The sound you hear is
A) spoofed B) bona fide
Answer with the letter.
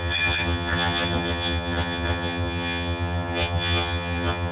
A